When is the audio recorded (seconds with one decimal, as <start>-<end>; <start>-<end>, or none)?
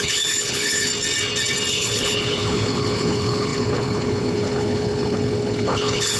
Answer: 0.9-1.7